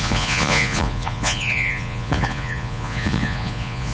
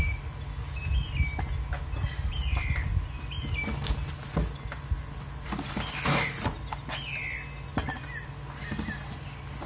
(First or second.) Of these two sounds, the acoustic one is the second